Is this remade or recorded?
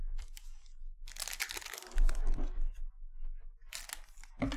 recorded